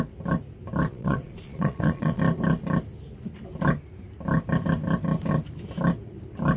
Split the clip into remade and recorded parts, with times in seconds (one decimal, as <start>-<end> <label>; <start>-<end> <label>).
0.0-0.9 recorded; 0.9-2.2 remade; 2.2-6.6 recorded